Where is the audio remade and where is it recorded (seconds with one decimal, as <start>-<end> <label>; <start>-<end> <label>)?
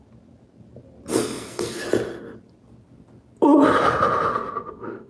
0.0-1.1 recorded; 1.1-1.8 remade; 1.8-4.3 recorded; 4.3-5.1 remade